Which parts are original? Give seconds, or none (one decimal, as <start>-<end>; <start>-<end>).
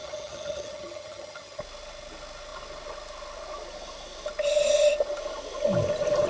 1.6-6.3